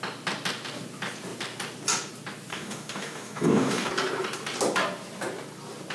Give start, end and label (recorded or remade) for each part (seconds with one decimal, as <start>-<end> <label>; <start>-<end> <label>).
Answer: 0.0-2.5 recorded; 2.5-3.9 remade; 3.9-5.9 recorded